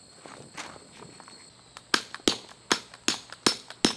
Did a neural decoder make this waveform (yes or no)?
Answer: no